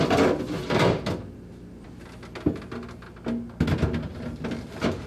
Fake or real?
real